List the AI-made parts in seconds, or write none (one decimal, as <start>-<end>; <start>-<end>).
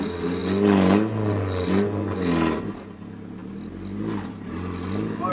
none